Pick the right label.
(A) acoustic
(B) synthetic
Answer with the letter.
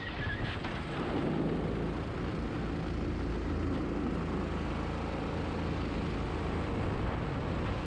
A